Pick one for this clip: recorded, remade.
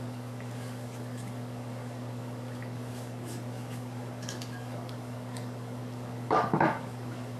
remade